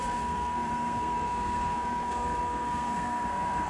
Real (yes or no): no